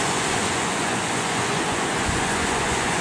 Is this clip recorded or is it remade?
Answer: remade